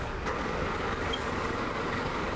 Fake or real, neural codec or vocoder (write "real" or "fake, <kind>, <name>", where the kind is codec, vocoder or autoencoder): fake, codec, DAC